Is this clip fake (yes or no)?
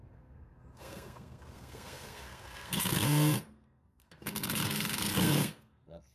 yes